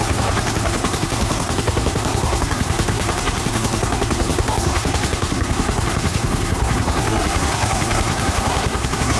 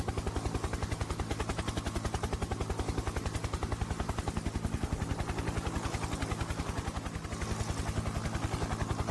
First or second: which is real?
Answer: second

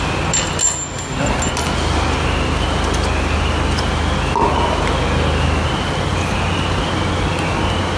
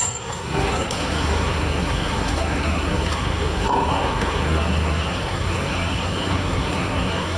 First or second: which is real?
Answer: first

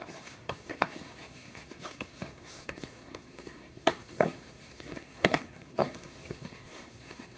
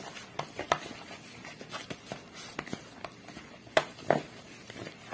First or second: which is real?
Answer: second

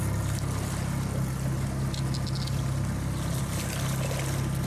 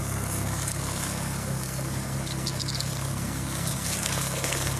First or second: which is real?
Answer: first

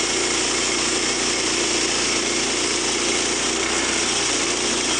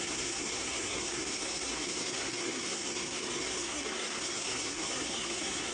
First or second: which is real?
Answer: first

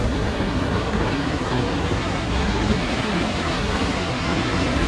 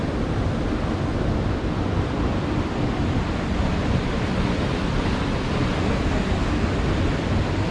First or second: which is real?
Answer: second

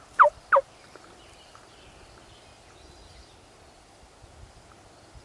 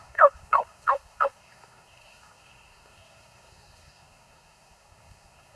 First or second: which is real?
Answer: first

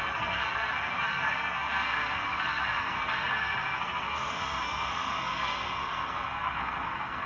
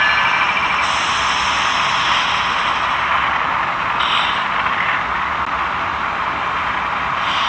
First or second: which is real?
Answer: second